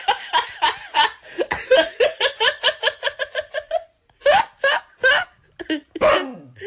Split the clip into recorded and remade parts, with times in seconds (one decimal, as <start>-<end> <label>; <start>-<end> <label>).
0.0-0.8 recorded; 0.8-4.0 remade; 4.0-6.7 recorded